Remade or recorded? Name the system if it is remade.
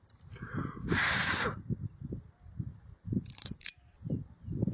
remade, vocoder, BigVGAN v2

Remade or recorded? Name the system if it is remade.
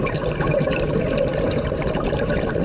remade, vocoder, BigVGAN v2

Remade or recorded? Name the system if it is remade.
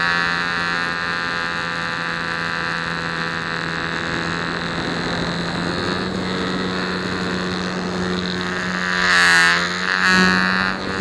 recorded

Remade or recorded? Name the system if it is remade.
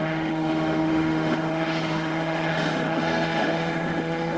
remade, autoencoder, DAC-VAE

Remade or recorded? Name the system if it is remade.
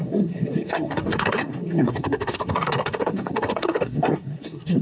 remade, codec, SNAC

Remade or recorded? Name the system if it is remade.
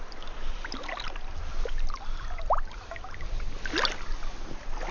recorded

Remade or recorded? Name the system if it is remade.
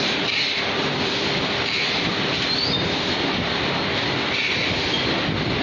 recorded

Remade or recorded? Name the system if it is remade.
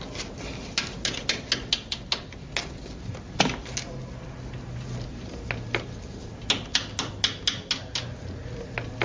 recorded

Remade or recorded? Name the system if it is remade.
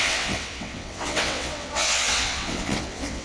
remade, vocoder, WaveNeXt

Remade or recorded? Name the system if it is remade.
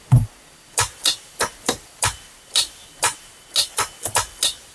recorded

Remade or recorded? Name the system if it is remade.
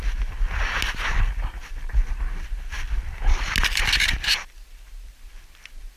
recorded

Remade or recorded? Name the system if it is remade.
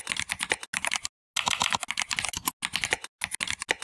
recorded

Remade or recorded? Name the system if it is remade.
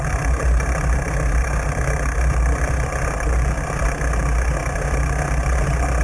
recorded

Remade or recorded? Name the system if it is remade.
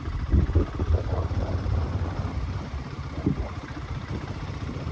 remade, vocoder, BigVGAN v2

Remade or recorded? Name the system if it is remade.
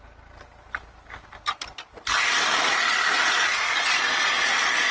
recorded